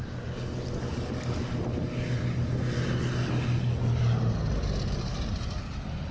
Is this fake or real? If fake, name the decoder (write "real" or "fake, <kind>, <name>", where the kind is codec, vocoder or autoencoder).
real